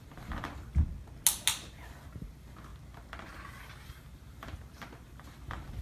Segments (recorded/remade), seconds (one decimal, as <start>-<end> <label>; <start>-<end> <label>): 0.0-0.7 remade; 0.7-1.7 recorded; 1.7-2.7 remade; 2.7-3.6 recorded; 3.6-5.8 remade